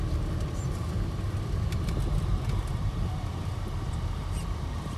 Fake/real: fake